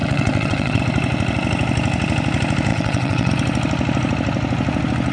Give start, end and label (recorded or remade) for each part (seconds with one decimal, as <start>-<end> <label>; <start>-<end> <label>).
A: 0.0-0.8 remade; 0.8-2.7 recorded; 2.7-3.3 remade; 3.3-5.1 recorded